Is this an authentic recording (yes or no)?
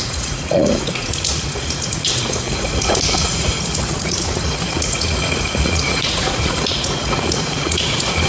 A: no